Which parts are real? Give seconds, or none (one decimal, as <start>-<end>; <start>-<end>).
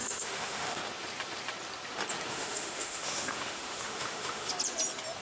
0.8-2.3; 4.5-5.2